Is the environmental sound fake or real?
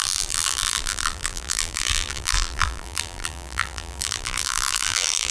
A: fake